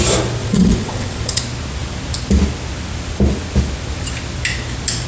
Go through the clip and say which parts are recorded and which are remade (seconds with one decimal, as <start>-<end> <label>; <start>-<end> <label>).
0.0-0.4 recorded; 0.4-1.4 remade; 1.4-5.1 recorded